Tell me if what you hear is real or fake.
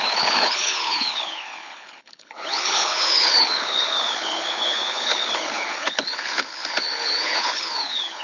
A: fake